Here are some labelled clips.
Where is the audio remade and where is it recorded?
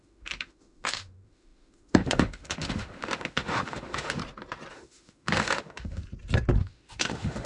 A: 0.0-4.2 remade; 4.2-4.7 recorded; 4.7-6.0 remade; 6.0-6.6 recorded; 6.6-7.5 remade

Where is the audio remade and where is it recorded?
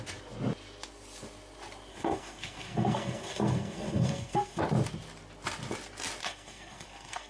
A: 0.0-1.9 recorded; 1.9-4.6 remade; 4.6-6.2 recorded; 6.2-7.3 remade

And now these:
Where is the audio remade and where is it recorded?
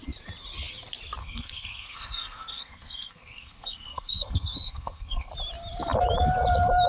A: 0.0-1.2 recorded; 1.2-5.3 remade; 5.3-6.9 recorded